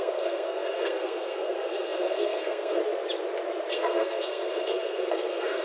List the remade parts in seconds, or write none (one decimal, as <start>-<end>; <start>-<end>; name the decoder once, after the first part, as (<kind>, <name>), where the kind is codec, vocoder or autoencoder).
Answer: 0.0-2.8 (codec, SNAC); 3.7-5.6